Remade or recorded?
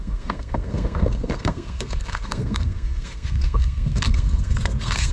remade